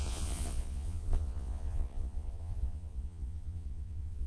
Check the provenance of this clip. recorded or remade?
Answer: remade